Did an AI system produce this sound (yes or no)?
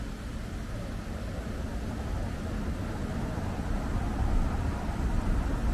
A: no